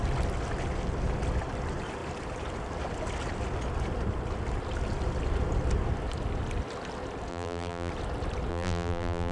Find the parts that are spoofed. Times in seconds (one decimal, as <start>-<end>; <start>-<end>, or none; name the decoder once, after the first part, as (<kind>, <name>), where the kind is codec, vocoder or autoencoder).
7.3-7.9 (vocoder, BigVGAN v2); 8.5-9.3